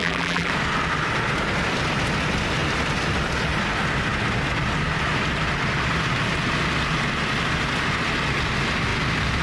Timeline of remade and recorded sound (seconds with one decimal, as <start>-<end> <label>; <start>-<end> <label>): 0.0-0.5 remade; 0.5-9.4 recorded